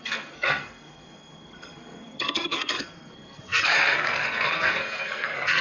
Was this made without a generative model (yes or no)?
no